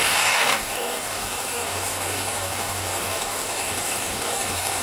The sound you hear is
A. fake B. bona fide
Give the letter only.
A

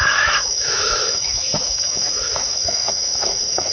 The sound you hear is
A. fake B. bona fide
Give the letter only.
A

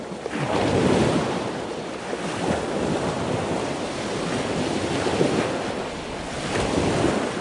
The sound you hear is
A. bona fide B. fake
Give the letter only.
A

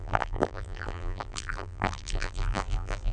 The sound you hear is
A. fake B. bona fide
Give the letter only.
A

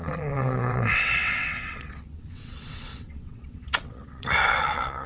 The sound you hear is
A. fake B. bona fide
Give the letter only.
A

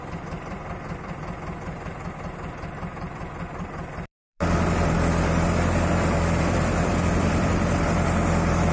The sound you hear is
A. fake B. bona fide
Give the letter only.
A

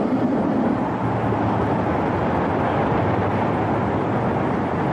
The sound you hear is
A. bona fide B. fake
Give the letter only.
A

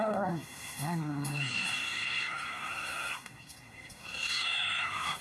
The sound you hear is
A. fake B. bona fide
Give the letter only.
A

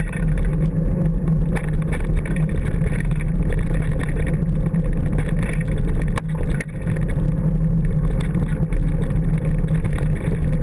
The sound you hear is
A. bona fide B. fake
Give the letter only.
A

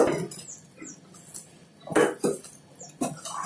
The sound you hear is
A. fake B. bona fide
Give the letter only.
B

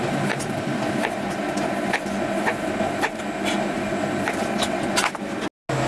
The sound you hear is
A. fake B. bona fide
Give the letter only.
B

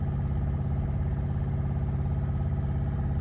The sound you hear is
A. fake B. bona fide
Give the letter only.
B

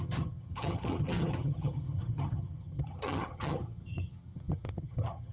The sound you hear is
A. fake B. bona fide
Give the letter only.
A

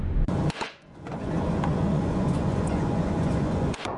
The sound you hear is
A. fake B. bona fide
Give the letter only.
A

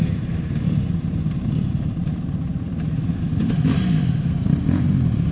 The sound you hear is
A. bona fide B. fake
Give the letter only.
B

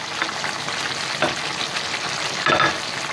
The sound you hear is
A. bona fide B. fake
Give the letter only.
A